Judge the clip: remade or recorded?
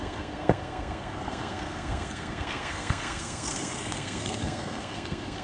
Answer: remade